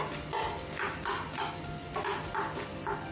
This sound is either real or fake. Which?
real